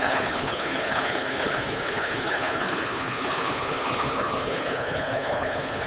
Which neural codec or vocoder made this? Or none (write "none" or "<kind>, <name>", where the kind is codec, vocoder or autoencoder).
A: codec, HILCodec